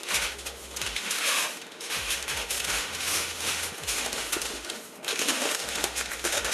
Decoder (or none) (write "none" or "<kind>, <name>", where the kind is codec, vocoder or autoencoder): autoencoder, DAC-VAE